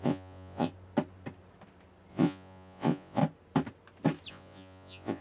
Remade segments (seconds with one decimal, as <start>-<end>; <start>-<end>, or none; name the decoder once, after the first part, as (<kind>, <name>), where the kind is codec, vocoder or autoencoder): 0.0-0.7 (vocoder, Vocos); 2.1-3.2; 4.3-5.2

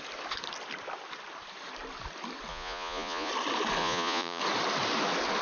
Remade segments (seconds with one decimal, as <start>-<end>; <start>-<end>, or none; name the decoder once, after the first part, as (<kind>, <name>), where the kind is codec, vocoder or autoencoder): 2.5-3.3 (vocoder, Vocos); 3.8-4.4

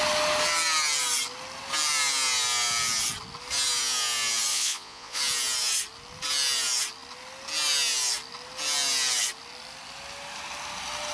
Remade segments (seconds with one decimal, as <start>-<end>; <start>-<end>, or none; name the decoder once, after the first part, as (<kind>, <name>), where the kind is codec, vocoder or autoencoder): 4.5-5.2 (vocoder, Vocos)

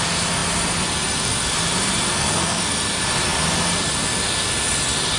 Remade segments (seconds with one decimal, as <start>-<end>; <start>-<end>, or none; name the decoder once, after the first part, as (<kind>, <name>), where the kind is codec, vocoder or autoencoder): 2.1-2.6 (codec, SNAC)

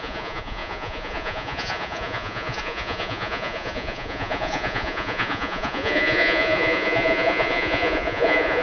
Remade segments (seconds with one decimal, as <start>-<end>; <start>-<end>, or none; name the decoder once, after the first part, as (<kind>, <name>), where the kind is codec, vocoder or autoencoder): 0.0-8.6 (vocoder, Vocos)

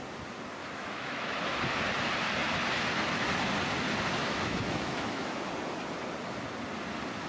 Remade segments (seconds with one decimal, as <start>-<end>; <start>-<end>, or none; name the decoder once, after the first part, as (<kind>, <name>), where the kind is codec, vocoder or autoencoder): 0.6-1.4 (autoencoder, DAC-VAE); 4.2-5.4

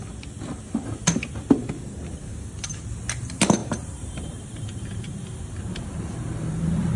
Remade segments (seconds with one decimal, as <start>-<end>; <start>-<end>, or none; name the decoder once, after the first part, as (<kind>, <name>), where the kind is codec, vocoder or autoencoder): 3.6-6.6 (vocoder, BigVGAN v2)

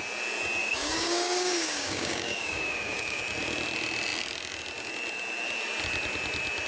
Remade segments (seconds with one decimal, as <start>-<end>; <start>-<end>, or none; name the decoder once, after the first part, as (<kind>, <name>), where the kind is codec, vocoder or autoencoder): 0.6-3.2 (codec, DAC)